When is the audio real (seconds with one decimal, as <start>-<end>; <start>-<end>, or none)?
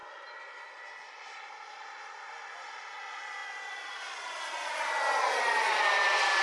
0.0-6.4